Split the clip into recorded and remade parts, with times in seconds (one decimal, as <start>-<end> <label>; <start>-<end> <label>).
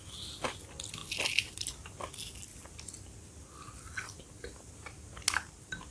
0.0-5.9 recorded